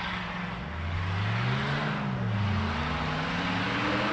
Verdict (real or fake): real